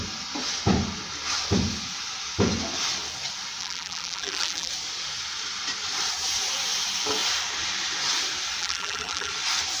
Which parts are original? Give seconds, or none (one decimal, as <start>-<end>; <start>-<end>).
0.0-3.6; 4.7-8.6; 9.3-9.8